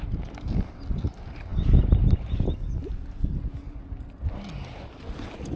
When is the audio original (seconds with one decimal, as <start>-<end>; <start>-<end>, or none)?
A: 0.0-5.6